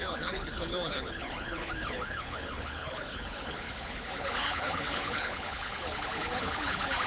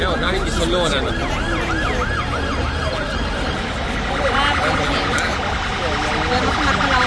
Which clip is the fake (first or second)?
first